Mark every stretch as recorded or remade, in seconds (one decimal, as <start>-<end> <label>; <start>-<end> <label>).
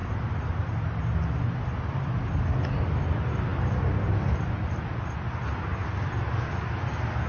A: 0.0-7.3 recorded